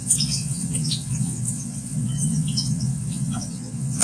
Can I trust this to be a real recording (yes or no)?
no